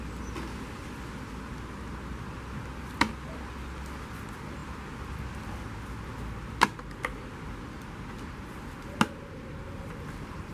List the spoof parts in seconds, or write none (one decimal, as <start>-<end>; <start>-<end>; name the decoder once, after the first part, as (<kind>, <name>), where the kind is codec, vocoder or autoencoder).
none